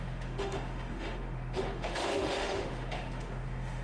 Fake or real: fake